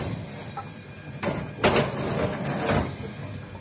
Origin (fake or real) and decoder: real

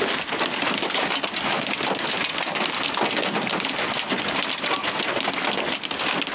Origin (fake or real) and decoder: real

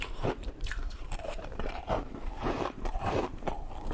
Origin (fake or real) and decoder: fake, vocoder, BigVGAN v2